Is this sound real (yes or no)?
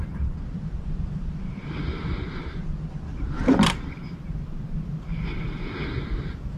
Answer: yes